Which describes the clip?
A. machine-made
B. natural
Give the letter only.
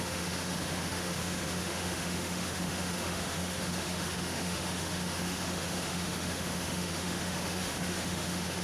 A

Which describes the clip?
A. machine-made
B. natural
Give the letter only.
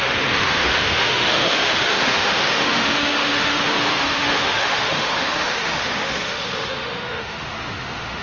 A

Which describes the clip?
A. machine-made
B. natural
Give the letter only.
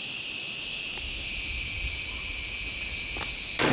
B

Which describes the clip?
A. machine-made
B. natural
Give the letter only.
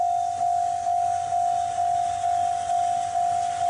B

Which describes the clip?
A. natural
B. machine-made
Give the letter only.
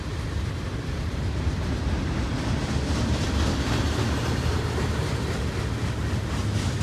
A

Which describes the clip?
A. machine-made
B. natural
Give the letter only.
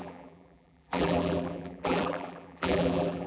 A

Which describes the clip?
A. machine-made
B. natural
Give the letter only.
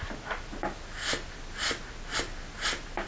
B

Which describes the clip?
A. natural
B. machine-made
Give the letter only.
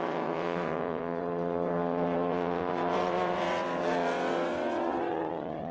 B